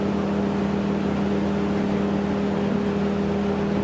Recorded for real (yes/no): yes